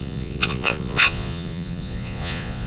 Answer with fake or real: fake